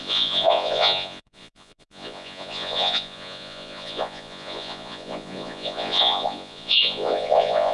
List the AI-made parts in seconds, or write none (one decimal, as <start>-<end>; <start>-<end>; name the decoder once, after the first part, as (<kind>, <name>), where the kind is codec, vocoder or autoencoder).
0.0-7.7 (vocoder, Vocos)